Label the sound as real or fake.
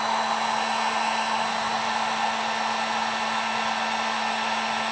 real